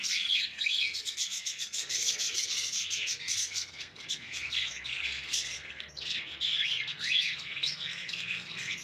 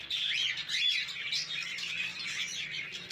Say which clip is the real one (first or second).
second